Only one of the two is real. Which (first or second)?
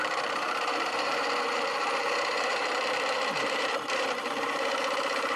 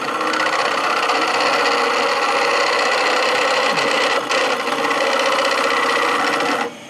second